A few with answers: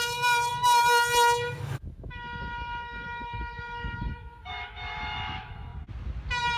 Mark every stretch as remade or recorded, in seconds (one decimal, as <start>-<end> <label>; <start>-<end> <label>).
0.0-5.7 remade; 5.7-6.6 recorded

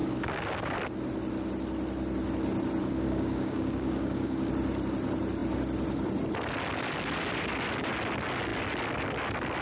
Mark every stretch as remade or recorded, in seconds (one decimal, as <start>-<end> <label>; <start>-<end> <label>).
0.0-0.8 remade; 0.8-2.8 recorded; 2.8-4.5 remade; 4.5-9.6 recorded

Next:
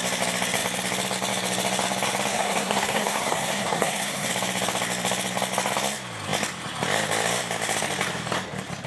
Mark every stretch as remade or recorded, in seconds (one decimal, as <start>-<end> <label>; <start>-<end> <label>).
0.0-2.3 recorded; 2.3-4.3 remade; 4.3-8.9 recorded

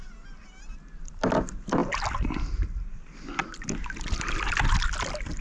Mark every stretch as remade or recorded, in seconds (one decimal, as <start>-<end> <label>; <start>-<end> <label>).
0.0-1.8 recorded; 1.8-3.5 remade; 3.5-5.4 recorded